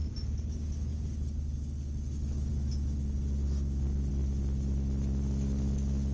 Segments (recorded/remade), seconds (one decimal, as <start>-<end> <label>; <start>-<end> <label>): 0.0-6.1 recorded